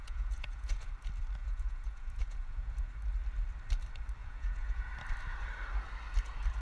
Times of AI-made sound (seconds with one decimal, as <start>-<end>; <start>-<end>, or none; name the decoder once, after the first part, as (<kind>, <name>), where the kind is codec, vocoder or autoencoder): 0.0-0.9 (vocoder, Vocos); 1.4-2.9; 4.2-4.9